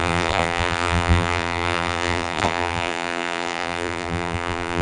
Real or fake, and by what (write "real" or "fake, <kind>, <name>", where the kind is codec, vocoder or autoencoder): fake, vocoder, BigVGAN v2